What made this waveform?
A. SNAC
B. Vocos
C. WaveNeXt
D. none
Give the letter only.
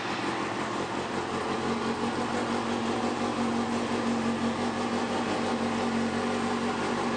D